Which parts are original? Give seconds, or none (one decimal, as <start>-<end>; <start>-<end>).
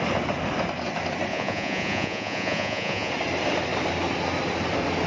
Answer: 0.0-1.3; 3.1-5.1